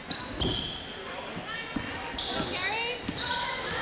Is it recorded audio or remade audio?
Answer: recorded